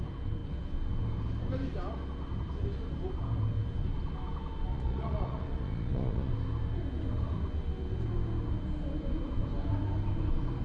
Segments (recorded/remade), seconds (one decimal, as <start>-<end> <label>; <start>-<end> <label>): 0.0-4.7 recorded; 4.7-6.3 remade; 6.3-10.6 recorded